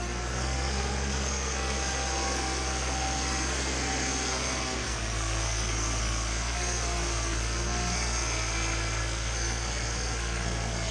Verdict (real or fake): fake